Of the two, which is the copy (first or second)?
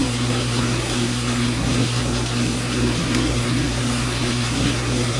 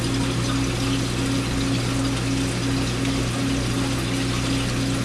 first